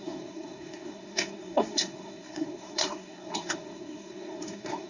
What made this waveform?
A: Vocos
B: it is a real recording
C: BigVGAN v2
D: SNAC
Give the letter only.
D